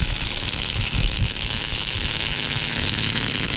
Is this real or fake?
fake